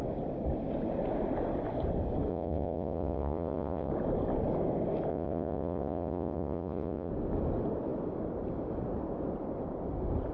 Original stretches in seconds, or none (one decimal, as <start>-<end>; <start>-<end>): 0.0-2.3; 3.9-5.1; 7.1-10.3